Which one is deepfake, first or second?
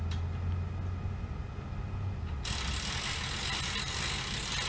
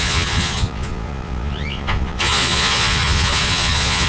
second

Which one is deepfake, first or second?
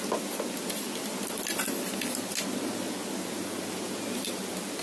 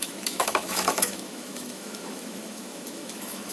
second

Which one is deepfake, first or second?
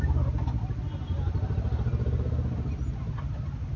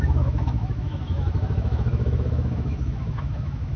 second